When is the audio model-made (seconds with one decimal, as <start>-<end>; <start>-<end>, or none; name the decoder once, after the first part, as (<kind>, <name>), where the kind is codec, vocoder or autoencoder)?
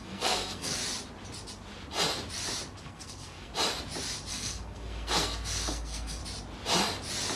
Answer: 0.0-0.8 (codec, SNAC); 2.8-3.5; 4.3-6.2